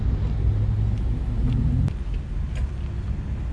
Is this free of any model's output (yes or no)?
yes